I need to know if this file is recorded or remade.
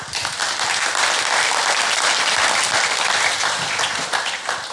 remade